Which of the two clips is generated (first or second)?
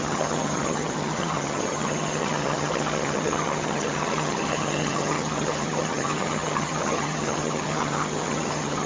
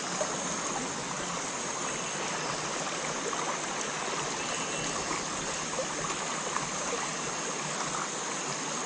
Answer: first